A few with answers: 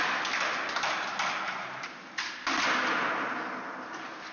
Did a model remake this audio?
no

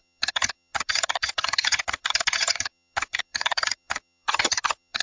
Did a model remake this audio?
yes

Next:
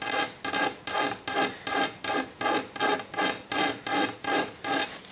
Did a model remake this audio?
no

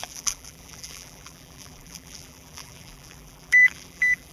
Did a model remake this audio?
yes